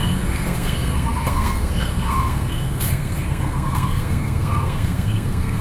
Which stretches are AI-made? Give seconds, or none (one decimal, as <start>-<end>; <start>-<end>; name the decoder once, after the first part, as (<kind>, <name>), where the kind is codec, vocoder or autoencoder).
0.0-5.6 (codec, SNAC)